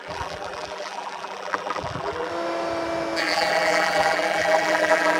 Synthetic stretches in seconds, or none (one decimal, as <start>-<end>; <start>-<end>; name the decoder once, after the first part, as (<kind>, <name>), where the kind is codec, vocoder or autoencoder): 0.0-2.3 (vocoder, BigVGAN v2); 3.2-5.2

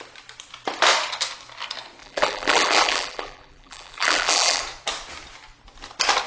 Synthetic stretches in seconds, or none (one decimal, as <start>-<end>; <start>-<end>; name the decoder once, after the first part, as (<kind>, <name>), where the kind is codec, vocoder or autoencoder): 2.0-4.6 (vocoder, BigVGAN v2)